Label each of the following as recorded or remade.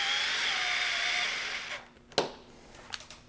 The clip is recorded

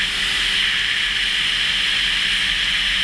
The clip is recorded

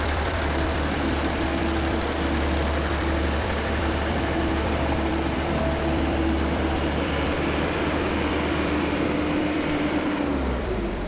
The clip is remade